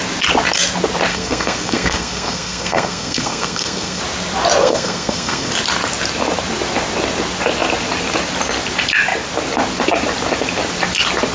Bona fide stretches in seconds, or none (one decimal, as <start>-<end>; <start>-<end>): 0.0-1.1; 4.0-4.6; 5.5-11.3